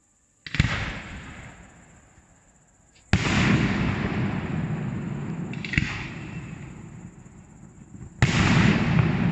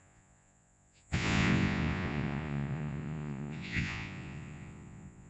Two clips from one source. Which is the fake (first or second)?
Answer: second